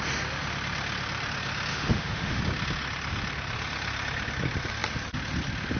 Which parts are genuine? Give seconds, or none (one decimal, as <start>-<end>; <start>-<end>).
0.0-1.7; 2.4-5.8